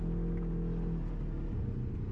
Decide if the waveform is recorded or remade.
recorded